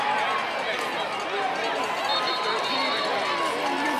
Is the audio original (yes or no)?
yes